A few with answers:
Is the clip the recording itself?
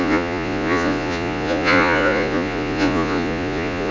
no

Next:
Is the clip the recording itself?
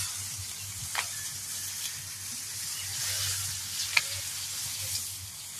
yes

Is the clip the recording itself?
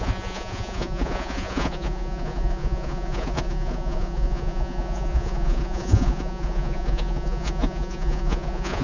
no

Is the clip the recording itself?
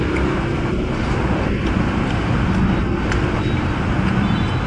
yes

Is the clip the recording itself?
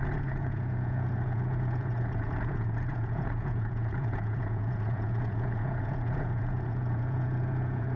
no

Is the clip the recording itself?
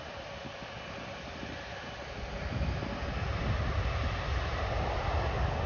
yes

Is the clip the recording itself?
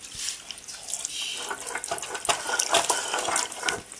yes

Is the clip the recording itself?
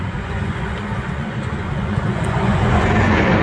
no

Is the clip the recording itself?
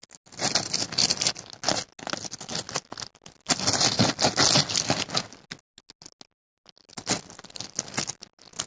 yes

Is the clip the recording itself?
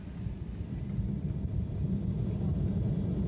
yes